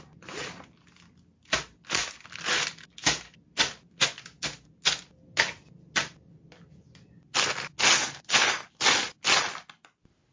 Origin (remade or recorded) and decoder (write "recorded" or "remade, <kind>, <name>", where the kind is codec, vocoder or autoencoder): recorded